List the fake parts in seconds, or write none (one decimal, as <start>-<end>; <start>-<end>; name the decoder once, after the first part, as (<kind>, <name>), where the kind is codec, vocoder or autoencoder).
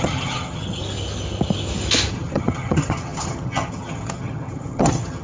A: 0.0-0.8 (vocoder, HiFi-GAN); 2.1-5.2